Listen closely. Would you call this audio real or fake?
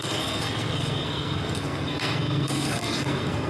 fake